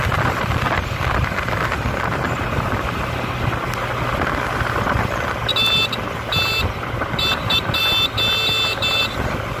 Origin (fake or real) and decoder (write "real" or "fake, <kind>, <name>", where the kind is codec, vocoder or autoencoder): real